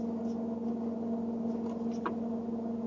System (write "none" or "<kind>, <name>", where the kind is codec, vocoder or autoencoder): none